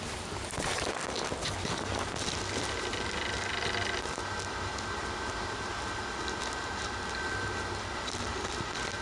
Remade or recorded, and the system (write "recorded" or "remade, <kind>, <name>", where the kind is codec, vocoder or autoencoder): recorded